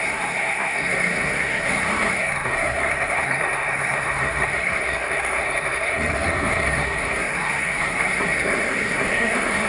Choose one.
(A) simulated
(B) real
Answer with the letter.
A